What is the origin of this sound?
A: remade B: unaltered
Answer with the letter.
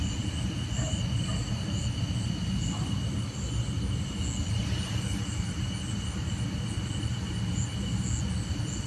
B